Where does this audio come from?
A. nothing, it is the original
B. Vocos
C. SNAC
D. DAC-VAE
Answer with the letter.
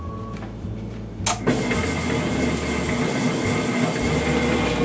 A